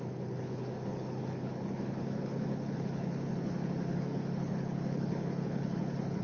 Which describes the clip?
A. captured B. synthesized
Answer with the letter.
B